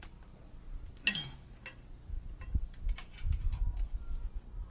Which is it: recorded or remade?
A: recorded